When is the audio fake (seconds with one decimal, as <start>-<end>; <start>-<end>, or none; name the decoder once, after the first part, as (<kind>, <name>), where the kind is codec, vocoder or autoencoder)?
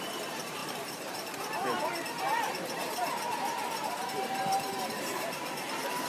0.0-6.1 (vocoder, BigVGAN v2)